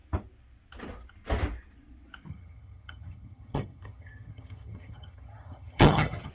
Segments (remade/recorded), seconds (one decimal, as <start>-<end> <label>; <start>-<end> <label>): 0.0-2.3 recorded; 2.3-6.3 remade

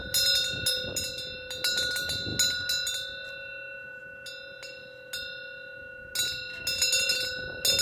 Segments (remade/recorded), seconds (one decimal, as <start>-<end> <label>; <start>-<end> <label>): 0.0-7.8 recorded

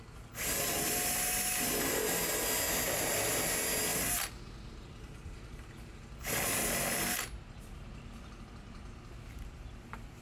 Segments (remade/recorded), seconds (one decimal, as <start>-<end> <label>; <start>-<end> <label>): 0.0-10.2 recorded

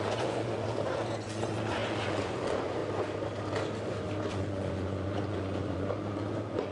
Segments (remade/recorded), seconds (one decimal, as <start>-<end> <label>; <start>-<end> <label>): 0.0-2.8 remade; 2.8-4.3 recorded; 4.3-6.7 remade

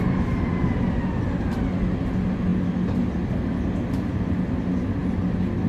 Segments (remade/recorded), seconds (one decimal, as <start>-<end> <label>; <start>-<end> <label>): 0.0-5.7 recorded

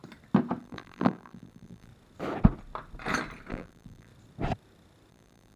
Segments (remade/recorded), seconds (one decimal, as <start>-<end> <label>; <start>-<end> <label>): 0.0-0.6 recorded; 0.6-1.9 remade; 1.9-3.5 recorded; 3.5-4.1 remade; 4.1-5.1 recorded; 5.1-5.6 remade